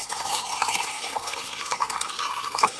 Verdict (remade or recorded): remade